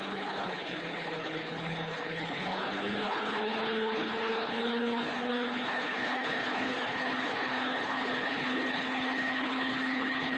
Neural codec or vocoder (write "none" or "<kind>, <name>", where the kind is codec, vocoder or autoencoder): codec, HILCodec